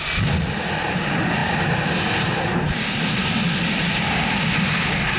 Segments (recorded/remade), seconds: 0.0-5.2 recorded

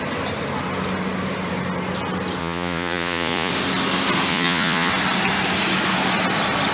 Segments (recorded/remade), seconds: 0.0-2.4 recorded; 2.4-3.5 remade; 3.5-4.3 recorded; 4.3-4.9 remade; 4.9-6.7 recorded

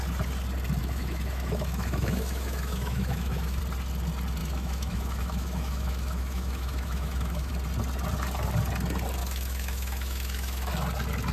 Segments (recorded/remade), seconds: 0.0-0.8 recorded; 0.8-3.6 remade; 3.6-4.4 recorded; 4.4-7.5 remade; 7.5-9.2 recorded; 9.2-10.7 remade; 10.7-11.3 recorded

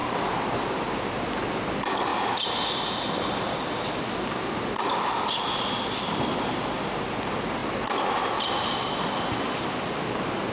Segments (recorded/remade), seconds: 0.0-10.5 recorded

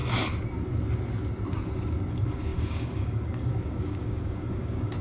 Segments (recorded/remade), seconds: 0.0-2.1 recorded; 2.1-5.0 remade

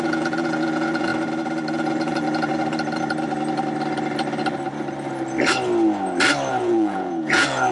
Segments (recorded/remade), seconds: 0.0-1.1 remade; 1.1-1.7 recorded; 1.7-2.5 remade; 2.5-6.5 recorded; 6.5-7.7 remade